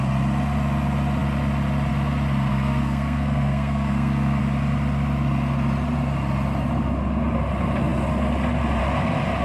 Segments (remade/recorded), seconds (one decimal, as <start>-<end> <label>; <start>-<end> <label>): 0.0-2.5 recorded; 2.5-4.4 remade; 4.4-9.4 recorded